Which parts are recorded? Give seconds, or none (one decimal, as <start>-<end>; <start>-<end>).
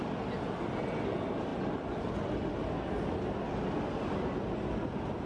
0.0-5.3